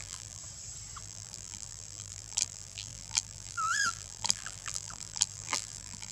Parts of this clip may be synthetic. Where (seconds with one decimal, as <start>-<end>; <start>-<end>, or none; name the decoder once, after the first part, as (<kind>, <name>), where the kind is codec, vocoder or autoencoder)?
0.0-0.4 (vocoder, BigVGAN v2); 1.0-6.1

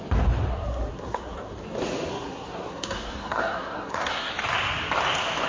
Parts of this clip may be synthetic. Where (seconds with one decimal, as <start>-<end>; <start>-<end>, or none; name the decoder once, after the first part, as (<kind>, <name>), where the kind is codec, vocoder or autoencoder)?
0.5-1.6 (codec, SNAC); 2.1-4.3